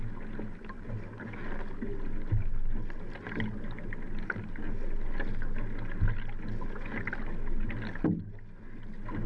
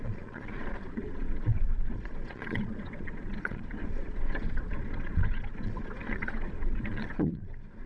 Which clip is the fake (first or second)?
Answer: second